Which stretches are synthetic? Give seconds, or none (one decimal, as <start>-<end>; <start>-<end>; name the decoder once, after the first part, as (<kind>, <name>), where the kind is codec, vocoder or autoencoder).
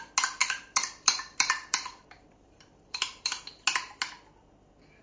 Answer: 0.4-3.4 (vocoder, BigVGAN v2)